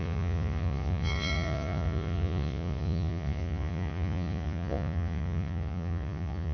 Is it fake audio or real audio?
fake